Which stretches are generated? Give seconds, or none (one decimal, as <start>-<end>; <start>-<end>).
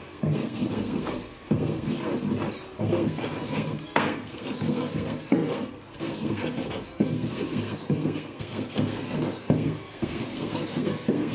0.0-2.1; 2.8-11.3